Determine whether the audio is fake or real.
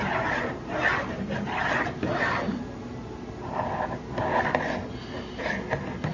real